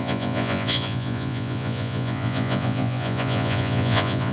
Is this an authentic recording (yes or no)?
no